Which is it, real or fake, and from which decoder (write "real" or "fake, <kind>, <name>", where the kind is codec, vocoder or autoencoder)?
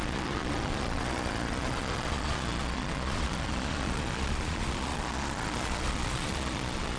fake, vocoder, Vocos